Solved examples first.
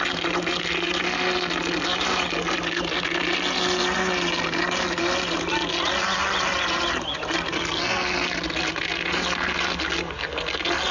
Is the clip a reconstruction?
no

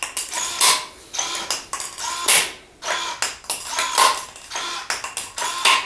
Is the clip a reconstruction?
no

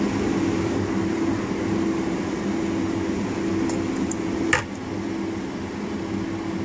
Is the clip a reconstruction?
no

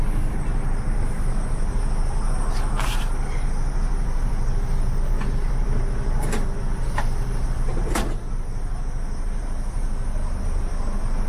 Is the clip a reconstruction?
yes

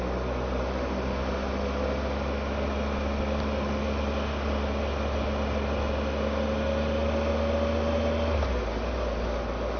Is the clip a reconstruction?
no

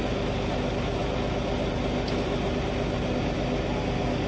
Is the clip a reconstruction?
no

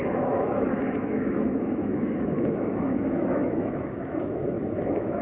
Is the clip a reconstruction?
yes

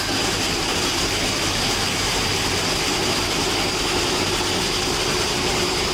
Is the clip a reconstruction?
no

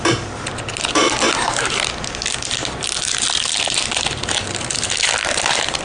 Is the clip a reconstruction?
no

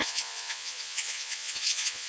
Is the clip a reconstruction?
yes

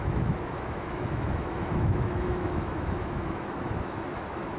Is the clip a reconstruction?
yes